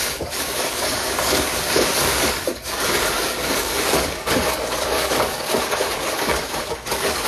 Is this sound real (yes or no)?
no